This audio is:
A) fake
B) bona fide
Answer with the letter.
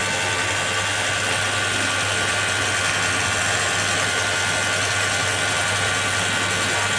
B